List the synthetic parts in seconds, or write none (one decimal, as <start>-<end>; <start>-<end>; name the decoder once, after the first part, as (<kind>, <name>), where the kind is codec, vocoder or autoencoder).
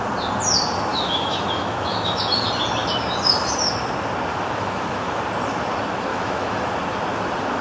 0.9-2.2 (autoencoder, DAC-VAE); 4.3-5.2; 6.1-6.7